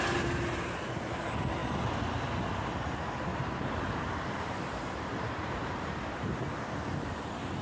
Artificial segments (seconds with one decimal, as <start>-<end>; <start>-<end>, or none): 3.3-7.1